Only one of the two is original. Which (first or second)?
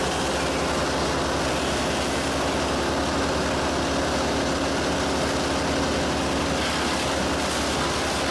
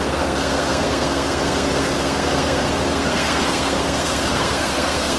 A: first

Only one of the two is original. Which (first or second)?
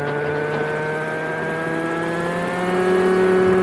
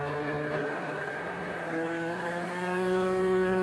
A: first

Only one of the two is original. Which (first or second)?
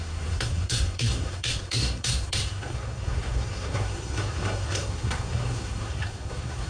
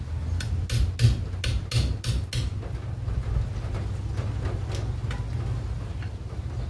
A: second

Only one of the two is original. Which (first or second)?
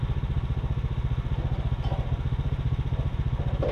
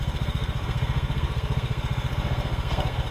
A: first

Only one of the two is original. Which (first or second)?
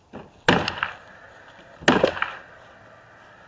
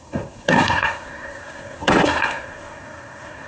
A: first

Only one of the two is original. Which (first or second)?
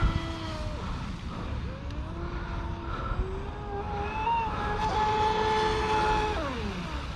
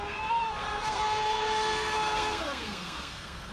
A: first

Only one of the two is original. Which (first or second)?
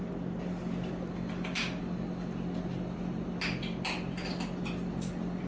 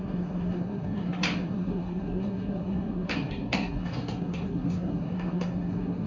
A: first